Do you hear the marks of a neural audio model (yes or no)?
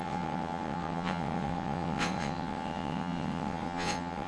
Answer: yes